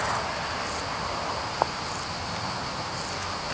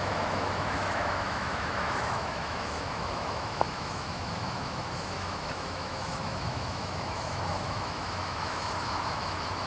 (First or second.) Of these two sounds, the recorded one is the first